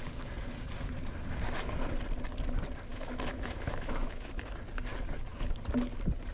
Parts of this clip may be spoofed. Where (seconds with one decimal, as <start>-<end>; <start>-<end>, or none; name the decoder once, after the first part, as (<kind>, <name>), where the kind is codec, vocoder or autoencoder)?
2.9-4.5 (autoencoder, DAC-VAE)